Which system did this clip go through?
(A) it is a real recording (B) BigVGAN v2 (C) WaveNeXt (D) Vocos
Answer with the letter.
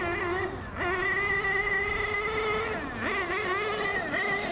A